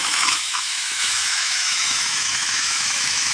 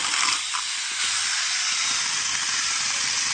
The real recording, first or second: second